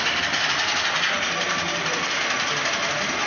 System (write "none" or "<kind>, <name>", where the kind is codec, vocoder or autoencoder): none